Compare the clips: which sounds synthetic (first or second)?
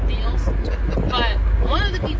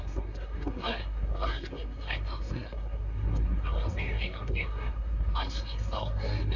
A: second